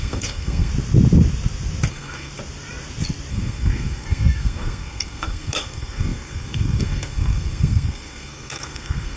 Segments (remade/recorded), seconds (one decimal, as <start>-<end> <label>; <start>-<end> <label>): 0.0-0.7 remade; 0.7-1.9 recorded; 1.9-2.3 remade; 2.3-3.3 recorded; 3.3-9.2 remade